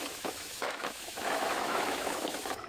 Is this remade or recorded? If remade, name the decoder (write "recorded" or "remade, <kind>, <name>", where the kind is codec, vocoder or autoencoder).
remade, autoencoder, DAC-VAE